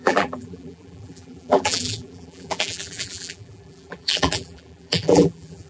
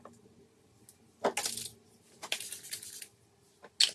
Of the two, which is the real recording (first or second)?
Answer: second